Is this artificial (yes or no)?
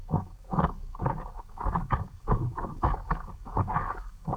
yes